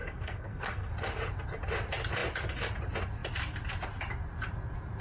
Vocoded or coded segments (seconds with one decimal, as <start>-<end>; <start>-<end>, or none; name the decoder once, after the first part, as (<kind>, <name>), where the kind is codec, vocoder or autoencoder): 0.0-0.9 (codec, SNAC)